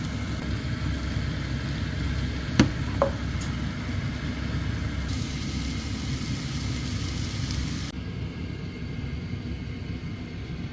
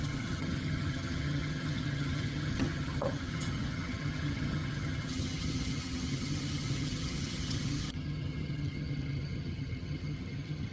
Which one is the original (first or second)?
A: first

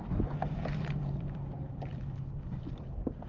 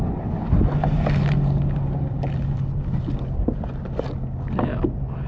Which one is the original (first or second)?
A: second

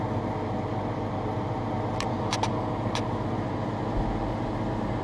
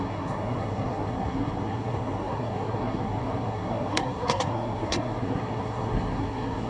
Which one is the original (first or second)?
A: first